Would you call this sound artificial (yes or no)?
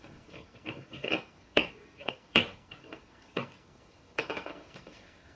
yes